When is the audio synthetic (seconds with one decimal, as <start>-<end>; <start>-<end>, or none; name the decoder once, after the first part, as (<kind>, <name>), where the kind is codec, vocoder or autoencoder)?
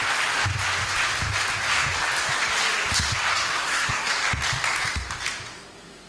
3.3-4.1 (codec, SNAC)